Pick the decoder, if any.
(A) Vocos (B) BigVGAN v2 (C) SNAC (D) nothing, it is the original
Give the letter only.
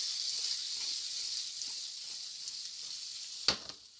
D